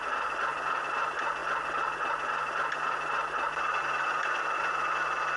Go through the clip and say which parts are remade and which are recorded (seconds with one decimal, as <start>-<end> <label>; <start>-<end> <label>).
0.0-5.4 recorded